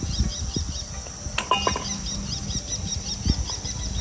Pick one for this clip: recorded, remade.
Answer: recorded